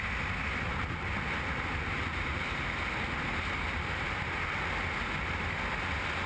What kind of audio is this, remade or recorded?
recorded